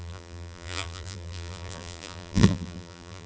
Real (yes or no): no